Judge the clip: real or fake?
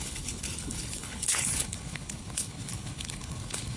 fake